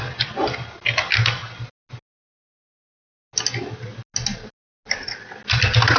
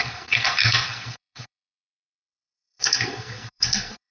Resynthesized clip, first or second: second